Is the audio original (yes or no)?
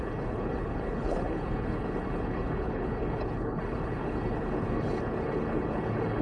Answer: no